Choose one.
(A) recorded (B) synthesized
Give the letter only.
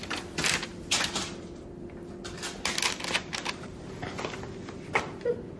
A